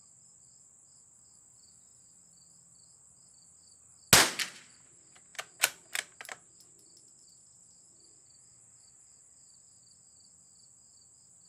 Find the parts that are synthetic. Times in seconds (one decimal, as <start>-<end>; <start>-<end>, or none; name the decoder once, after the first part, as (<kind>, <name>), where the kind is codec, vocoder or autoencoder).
none